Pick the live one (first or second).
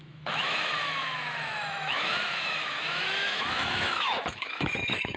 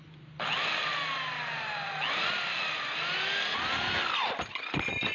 second